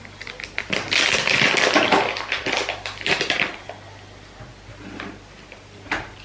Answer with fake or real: real